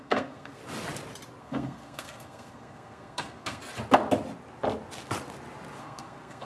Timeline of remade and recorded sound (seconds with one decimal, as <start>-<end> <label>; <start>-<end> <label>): 0.0-0.6 remade; 0.6-1.4 recorded; 1.4-3.6 remade; 3.6-5.8 recorded; 5.8-6.4 remade